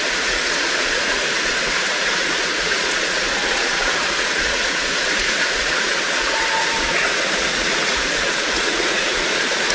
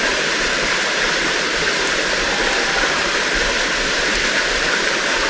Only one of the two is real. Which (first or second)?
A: second